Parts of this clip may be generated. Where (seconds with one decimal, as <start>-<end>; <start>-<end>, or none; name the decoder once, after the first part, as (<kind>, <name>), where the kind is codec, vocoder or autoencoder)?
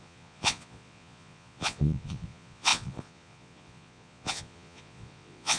0.0-5.6 (vocoder, Vocos)